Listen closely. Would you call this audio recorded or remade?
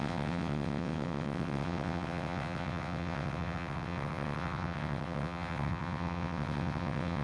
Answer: remade